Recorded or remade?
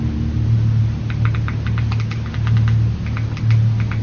recorded